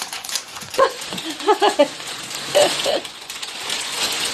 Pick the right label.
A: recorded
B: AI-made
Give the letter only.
B